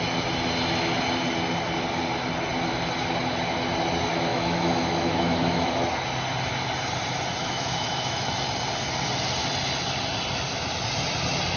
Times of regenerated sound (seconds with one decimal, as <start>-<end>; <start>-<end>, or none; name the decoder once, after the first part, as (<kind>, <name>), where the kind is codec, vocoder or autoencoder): 4.3-5.7 (autoencoder, DAC-VAE); 7.4-8.3